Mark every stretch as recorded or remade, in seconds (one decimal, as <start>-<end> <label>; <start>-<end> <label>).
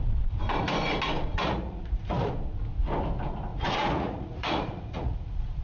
0.0-1.3 recorded; 1.3-2.3 remade; 2.3-3.5 recorded; 3.5-5.6 remade